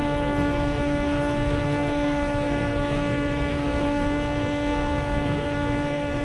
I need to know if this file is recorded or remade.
remade